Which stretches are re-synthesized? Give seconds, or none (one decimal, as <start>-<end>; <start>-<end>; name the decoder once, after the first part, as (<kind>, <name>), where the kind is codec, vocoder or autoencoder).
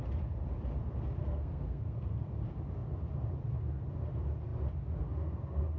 1.2-2.1 (codec, SNAC)